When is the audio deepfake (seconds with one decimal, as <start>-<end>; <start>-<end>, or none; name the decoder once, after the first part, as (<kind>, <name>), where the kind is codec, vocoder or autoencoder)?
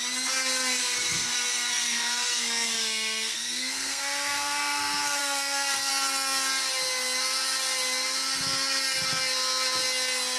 0.8-5.9 (codec, SNAC)